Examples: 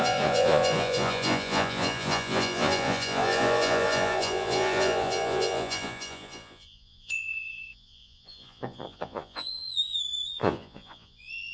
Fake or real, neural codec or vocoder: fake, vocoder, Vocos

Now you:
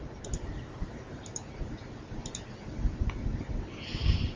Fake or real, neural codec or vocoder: real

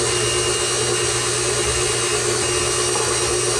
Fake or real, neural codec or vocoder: real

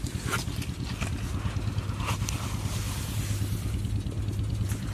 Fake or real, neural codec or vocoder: real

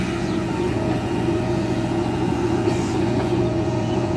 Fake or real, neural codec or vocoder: fake, vocoder, Vocos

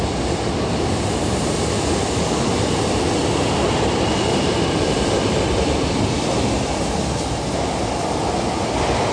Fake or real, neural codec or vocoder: real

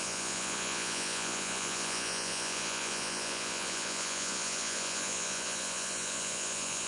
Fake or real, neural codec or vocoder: fake, vocoder, Vocos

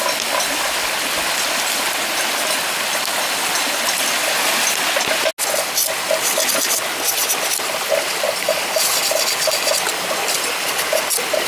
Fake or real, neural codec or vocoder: real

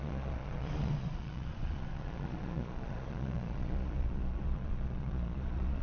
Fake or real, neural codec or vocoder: fake, vocoder, Vocos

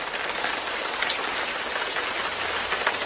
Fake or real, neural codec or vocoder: real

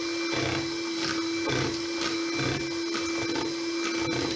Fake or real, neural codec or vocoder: real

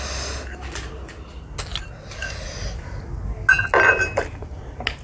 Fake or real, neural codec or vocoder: real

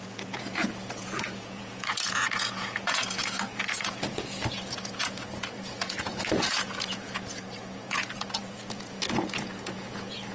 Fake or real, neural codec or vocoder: fake, vocoder, Vocos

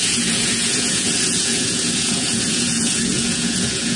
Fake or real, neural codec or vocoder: fake, vocoder, Vocos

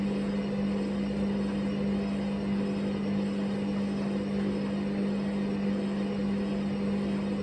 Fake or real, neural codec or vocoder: real